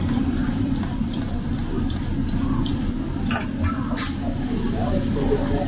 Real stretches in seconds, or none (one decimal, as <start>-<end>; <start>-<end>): 0.0-0.4; 2.0-2.7; 3.3-5.7